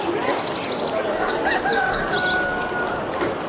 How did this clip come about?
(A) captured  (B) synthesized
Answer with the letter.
A